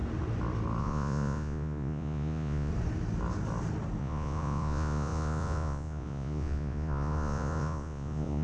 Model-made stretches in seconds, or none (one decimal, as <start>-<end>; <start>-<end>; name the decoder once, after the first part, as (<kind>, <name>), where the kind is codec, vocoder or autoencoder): 0.8-2.7 (vocoder, Vocos); 4.0-8.4

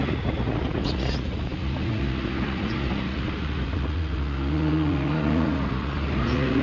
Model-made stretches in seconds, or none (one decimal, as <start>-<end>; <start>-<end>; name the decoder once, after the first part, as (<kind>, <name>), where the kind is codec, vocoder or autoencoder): 0.0-6.6 (vocoder, Vocos)

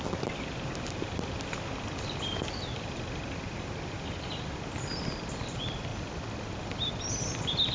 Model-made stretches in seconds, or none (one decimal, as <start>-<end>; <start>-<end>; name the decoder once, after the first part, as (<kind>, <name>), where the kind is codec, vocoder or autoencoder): none

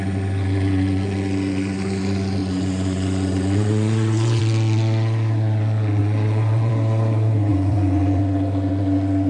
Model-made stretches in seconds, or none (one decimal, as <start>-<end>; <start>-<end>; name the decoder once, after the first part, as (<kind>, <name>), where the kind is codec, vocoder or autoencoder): 2.4-4.4 (vocoder, Vocos); 6.0-6.7; 7.5-8.2

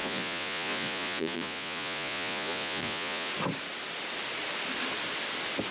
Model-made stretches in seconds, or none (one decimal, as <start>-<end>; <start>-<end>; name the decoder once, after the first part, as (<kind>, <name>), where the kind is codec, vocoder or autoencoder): 0.0-3.3 (vocoder, Vocos)